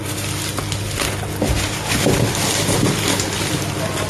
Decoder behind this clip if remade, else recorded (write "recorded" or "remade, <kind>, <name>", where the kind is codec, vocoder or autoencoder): recorded